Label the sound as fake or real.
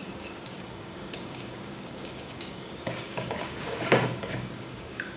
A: fake